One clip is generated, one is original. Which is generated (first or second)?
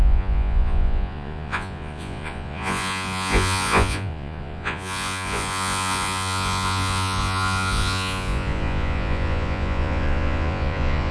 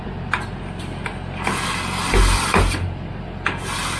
first